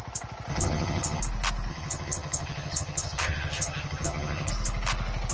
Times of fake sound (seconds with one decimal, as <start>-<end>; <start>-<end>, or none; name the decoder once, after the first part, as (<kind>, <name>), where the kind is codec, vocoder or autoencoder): 0.5-1.2 (vocoder, HiFi-GAN); 1.7-4.5